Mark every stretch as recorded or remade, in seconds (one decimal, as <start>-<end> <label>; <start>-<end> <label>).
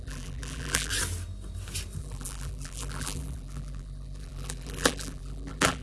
0.0-0.9 remade; 0.9-2.0 recorded; 2.0-5.8 remade